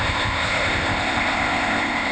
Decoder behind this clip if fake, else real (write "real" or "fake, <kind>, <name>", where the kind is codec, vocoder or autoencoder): fake, codec, ZipCodec